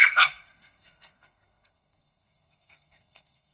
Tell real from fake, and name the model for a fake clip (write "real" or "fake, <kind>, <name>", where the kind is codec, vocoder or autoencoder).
fake, codec, SNAC